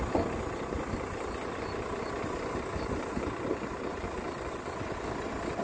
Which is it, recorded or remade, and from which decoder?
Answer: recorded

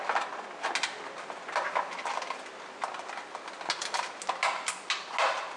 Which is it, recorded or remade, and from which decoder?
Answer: recorded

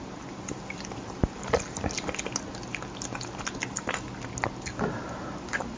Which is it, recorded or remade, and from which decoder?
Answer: recorded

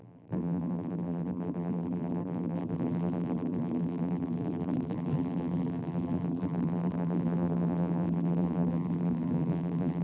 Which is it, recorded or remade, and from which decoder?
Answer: remade, vocoder, BigVGAN v2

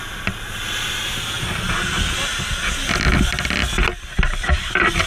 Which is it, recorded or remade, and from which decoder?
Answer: recorded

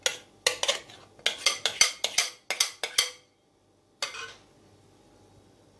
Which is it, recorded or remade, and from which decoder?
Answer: recorded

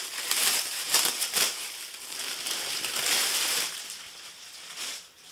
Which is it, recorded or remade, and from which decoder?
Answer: remade, vocoder, BigVGAN v2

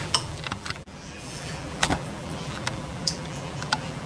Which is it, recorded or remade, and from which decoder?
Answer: remade, vocoder, BigVGAN v2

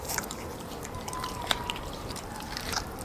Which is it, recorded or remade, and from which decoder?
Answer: remade, vocoder, BigVGAN v2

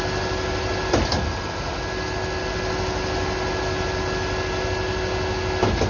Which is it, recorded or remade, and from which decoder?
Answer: recorded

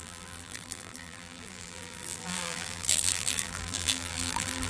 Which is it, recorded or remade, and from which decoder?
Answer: remade, vocoder, BigVGAN v2